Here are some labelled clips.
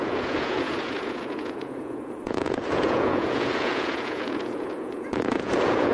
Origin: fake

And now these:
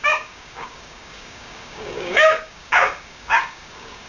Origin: fake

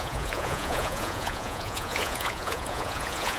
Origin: fake